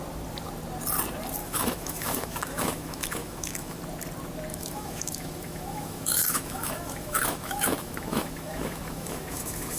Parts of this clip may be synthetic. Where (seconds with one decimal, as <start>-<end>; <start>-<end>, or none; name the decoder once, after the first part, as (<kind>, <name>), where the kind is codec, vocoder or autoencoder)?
1.4-3.8 (autoencoder, DAC-VAE); 4.5-9.8